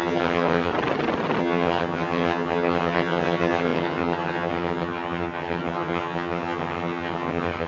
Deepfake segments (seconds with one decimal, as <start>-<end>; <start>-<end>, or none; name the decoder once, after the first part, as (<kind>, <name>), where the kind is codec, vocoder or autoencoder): 0.0-0.7 (vocoder, HiFi-GAN); 1.4-7.7